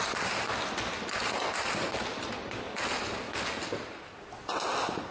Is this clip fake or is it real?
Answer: real